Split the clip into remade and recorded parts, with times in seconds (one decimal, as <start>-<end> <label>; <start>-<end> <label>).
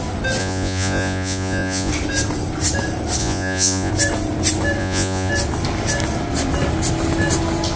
0.0-0.4 recorded; 0.4-1.9 remade; 1.9-3.2 recorded; 3.2-3.9 remade; 3.9-4.8 recorded; 4.8-5.3 remade; 5.3-7.8 recorded